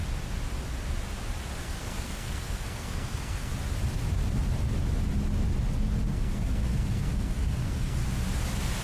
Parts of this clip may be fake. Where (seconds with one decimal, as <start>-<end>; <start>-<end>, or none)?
1.6-3.5; 6.1-8.0